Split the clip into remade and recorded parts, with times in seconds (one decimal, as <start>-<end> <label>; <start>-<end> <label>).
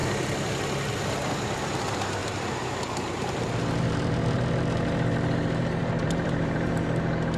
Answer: 0.0-1.6 remade; 1.6-2.2 recorded; 2.2-4.4 remade; 4.4-5.8 recorded; 5.8-6.7 remade; 6.7-7.4 recorded